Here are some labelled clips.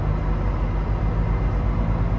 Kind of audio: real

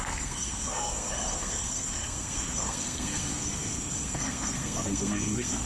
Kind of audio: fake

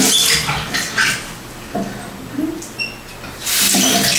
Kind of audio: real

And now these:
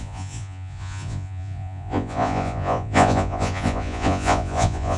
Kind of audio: fake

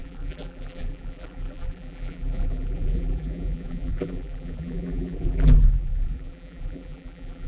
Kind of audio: fake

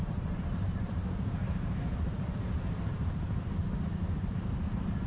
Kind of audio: fake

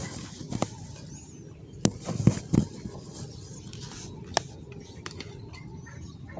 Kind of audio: real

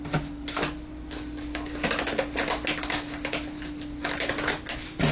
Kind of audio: real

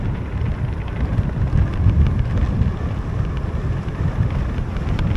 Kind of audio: real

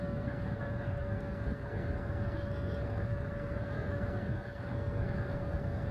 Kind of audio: fake